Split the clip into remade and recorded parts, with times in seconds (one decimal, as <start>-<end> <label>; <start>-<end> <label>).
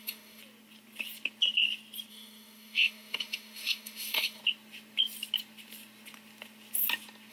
0.0-0.4 remade; 0.4-2.1 recorded; 2.1-4.4 remade; 4.4-7.3 recorded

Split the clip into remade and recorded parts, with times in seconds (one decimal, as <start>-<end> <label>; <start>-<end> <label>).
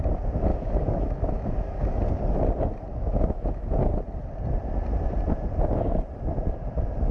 0.0-0.5 recorded; 0.5-2.1 remade; 2.1-3.0 recorded; 3.0-3.8 remade; 3.8-7.1 recorded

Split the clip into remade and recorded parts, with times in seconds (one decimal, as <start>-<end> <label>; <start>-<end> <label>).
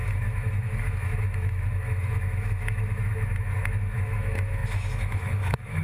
0.0-5.8 remade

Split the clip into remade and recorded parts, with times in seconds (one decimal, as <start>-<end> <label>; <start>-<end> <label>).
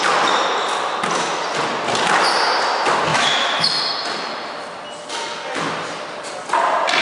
0.0-3.1 recorded; 3.1-3.8 remade; 3.8-7.0 recorded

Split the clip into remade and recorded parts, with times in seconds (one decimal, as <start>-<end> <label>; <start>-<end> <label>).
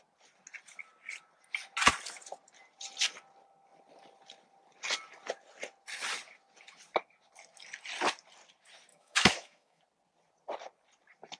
0.0-8.9 recorded; 8.9-9.8 remade; 9.8-11.4 recorded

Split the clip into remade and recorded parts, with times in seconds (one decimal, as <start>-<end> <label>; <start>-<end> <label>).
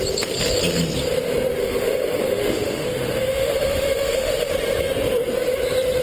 0.0-1.6 recorded; 1.6-4.5 remade; 4.5-6.0 recorded